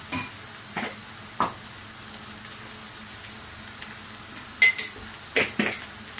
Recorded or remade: recorded